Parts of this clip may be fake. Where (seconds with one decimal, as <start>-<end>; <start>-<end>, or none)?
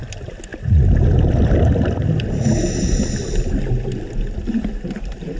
none